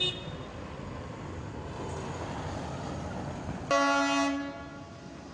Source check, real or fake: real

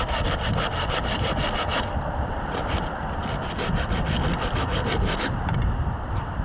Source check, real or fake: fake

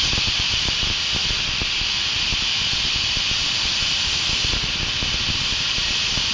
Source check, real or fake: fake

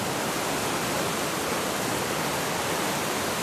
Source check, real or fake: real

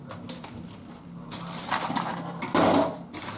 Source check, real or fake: real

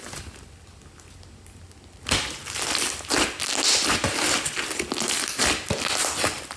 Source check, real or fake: real